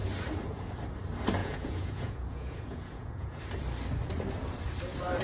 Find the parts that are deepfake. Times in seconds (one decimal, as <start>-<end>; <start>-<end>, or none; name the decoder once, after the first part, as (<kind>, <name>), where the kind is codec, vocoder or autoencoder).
1.4-3.4 (vocoder, Vocos)